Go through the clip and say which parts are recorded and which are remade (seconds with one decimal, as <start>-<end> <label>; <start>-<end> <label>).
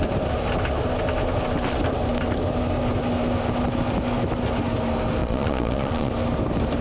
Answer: 0.0-5.2 recorded; 5.2-6.1 remade; 6.1-6.8 recorded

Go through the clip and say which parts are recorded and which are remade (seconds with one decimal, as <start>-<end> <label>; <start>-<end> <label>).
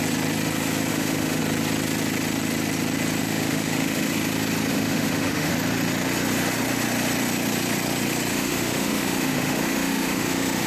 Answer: 0.0-0.9 recorded; 0.9-1.4 remade; 1.4-3.2 recorded; 3.2-4.1 remade; 4.1-4.7 recorded; 4.7-5.5 remade; 5.5-8.3 recorded; 8.3-10.7 remade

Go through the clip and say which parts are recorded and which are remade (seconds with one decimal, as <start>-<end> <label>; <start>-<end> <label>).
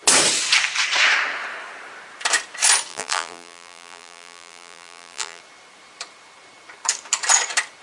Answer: 0.0-2.9 recorded; 2.9-5.4 remade; 5.4-7.8 recorded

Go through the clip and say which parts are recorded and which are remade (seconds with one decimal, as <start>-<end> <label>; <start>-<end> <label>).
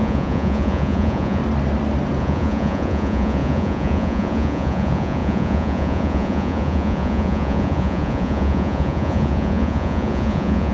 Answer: 0.0-1.4 remade; 1.4-2.2 recorded; 2.2-10.7 remade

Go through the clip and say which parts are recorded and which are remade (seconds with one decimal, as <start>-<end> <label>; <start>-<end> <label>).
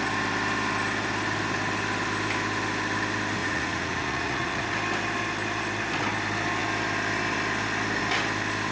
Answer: 0.0-3.4 recorded; 3.4-4.7 remade; 4.7-8.7 recorded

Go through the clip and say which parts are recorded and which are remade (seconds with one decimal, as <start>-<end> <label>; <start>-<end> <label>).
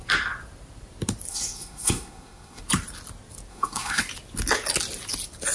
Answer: 0.0-1.3 recorded; 1.3-2.6 remade; 2.6-3.5 recorded; 3.5-4.0 remade; 4.0-5.5 recorded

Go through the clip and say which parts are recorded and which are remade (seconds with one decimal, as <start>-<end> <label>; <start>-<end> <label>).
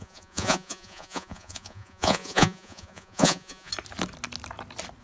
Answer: 0.0-3.7 remade; 3.7-5.0 recorded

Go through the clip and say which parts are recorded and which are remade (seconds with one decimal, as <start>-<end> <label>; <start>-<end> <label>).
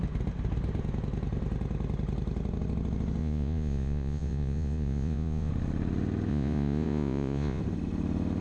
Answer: 0.0-3.2 recorded; 3.2-5.5 remade; 5.5-6.3 recorded; 6.3-7.6 remade; 7.6-8.4 recorded